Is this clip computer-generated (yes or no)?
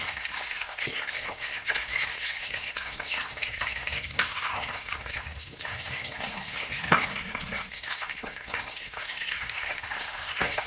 yes